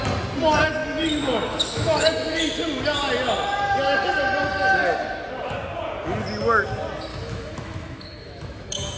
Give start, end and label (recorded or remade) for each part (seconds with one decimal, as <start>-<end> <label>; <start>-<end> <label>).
0.0-0.8 recorded; 0.8-2.5 remade; 2.5-7.1 recorded; 7.1-9.0 remade